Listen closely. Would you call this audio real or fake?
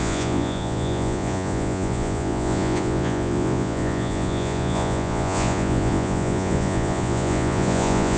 fake